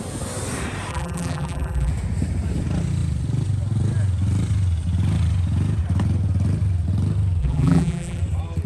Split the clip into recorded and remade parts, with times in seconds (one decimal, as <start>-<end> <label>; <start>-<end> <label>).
0.0-0.9 recorded; 0.9-1.9 remade; 1.9-7.4 recorded; 7.4-8.2 remade; 8.2-8.7 recorded